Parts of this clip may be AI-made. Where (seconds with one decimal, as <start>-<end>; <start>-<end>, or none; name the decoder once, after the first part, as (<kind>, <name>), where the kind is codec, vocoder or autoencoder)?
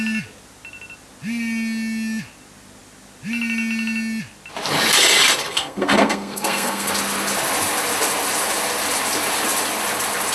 5.4-6.9 (codec, SNAC)